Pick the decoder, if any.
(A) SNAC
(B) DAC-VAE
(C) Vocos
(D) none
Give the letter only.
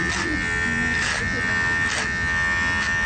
D